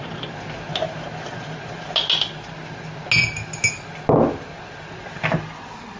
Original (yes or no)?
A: yes